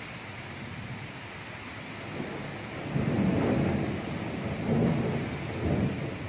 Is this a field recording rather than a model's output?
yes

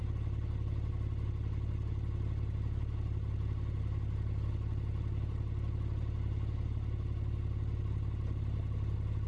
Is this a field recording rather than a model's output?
yes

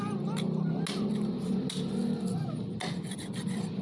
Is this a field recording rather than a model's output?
yes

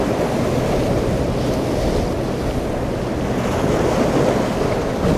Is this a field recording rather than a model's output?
yes